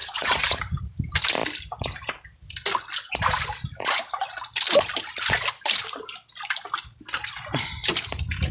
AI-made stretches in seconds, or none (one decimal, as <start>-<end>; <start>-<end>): 0.0-0.8